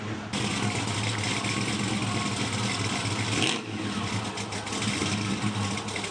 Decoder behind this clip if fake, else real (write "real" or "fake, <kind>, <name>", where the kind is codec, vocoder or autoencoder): real